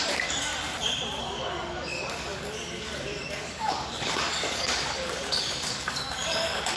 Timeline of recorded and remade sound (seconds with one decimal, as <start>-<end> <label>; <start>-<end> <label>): 0.0-0.5 remade; 0.5-1.2 recorded; 1.2-6.8 remade